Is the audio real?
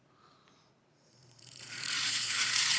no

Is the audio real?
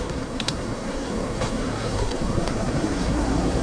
no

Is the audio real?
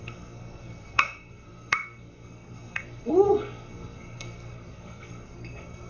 no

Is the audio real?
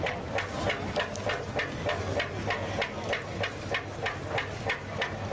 yes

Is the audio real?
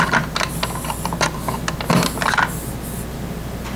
yes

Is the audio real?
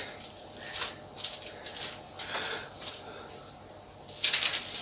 yes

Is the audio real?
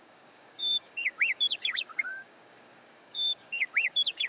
no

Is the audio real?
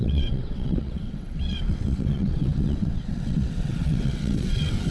no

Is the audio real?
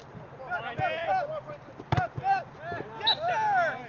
yes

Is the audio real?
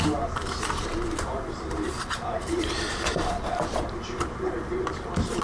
no